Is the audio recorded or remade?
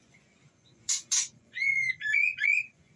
remade